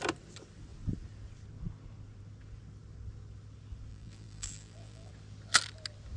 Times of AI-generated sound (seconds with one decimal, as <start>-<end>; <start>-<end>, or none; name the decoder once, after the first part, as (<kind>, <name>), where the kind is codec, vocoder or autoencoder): 3.9-5.1 (vocoder, BigVGAN v2)